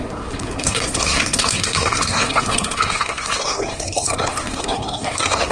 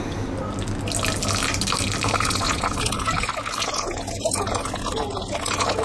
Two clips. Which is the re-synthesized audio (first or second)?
first